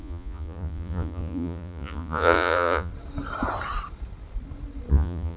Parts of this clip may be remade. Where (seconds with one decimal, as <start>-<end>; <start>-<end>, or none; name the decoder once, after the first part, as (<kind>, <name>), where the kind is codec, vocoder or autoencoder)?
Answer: 0.0-2.9 (vocoder, Vocos); 4.9-5.4